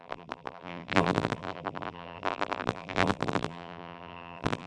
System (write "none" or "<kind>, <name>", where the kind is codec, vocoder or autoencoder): vocoder, BigVGAN v2